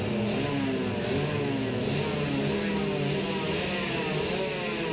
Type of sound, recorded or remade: recorded